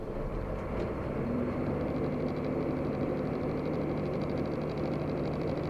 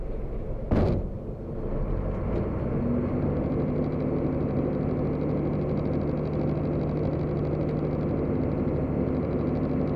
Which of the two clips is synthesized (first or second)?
first